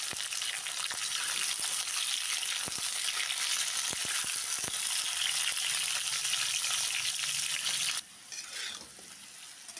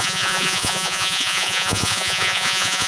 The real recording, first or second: first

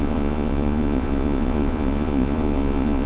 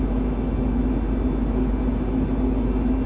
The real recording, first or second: second